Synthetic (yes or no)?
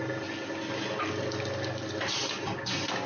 no